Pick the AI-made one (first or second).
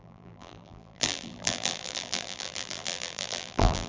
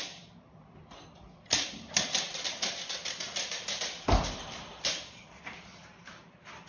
first